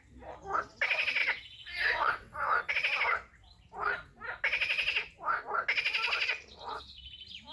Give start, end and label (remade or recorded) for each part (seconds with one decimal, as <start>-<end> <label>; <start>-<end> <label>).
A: 0.0-1.2 recorded; 1.2-2.7 remade; 2.7-7.5 recorded